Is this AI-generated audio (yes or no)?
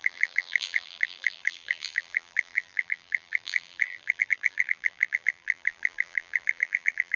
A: yes